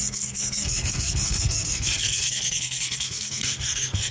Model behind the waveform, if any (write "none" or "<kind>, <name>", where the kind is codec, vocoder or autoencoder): codec, SNAC